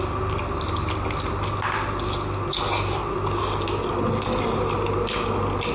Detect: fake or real real